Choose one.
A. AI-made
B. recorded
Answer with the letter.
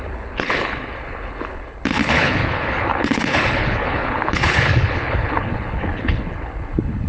A